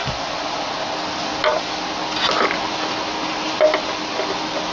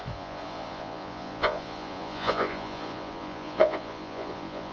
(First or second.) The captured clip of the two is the first